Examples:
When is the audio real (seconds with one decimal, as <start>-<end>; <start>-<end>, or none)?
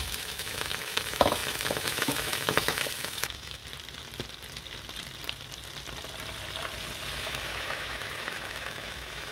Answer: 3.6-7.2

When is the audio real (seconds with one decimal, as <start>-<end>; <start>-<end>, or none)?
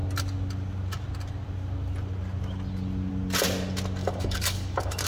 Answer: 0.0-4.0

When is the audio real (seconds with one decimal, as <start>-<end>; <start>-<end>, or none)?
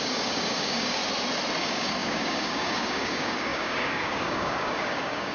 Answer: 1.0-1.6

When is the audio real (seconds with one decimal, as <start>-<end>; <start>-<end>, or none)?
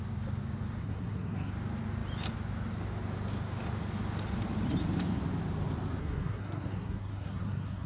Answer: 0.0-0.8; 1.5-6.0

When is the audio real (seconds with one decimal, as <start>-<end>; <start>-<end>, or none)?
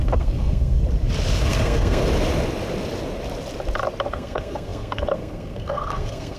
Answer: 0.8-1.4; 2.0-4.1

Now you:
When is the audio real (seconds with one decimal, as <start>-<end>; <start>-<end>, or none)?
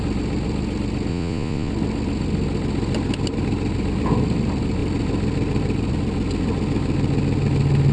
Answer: 0.0-1.1; 1.7-7.9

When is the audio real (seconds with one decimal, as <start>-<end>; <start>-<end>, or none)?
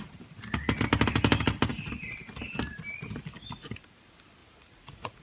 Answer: 0.0-4.4